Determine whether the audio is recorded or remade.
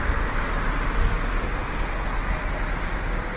recorded